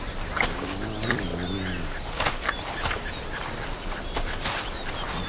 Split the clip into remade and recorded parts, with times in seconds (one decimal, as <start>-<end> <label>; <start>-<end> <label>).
0.0-1.3 remade; 1.3-2.1 recorded; 2.1-5.3 remade